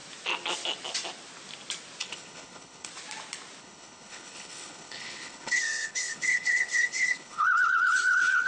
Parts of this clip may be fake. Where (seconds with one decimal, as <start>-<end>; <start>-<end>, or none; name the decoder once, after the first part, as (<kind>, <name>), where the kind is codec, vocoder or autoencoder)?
2.0-2.9 (codec, HILCodec); 3.6-8.5